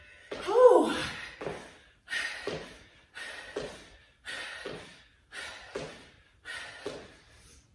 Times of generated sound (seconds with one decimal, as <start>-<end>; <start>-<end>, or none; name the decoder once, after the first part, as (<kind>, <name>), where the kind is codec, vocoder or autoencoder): none